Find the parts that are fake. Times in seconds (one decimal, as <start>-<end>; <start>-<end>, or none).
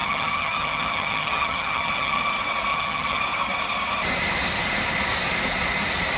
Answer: 0.0-2.3; 2.7-3.2